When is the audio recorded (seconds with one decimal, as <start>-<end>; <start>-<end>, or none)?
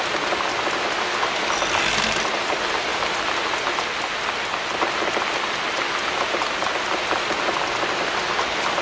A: 0.0-8.8